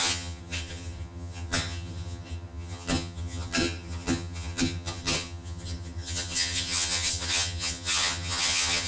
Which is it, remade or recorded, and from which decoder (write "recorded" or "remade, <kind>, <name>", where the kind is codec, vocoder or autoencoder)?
remade, vocoder, HiFi-GAN